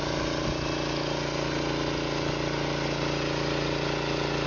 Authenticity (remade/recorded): recorded